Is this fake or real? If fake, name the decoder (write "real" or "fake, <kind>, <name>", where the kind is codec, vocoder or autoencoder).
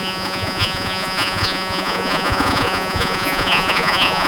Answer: fake, vocoder, Vocos